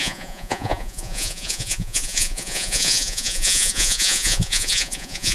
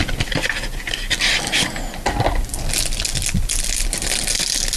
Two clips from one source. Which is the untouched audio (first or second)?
second